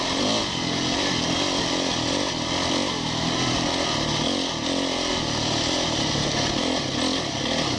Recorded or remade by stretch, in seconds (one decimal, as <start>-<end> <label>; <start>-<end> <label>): 0.0-7.8 recorded